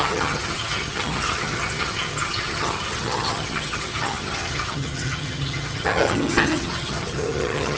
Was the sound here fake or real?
fake